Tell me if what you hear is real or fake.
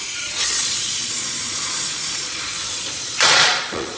fake